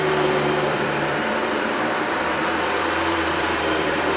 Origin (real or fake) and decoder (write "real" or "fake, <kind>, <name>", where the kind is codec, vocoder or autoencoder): fake, vocoder, BigVGAN v2